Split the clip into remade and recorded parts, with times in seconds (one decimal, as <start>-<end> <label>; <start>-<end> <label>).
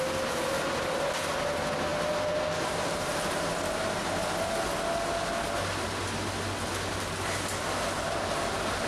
0.0-1.9 recorded; 1.9-3.5 remade; 3.5-8.9 recorded